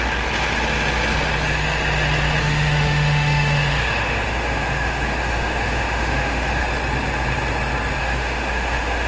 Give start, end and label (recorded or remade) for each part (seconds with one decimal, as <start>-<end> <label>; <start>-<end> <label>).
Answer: 0.0-2.4 recorded; 2.4-6.6 remade; 6.6-8.0 recorded; 8.0-9.1 remade